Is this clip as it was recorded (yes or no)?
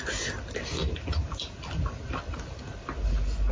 yes